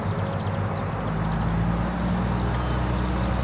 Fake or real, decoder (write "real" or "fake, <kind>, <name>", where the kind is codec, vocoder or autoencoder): real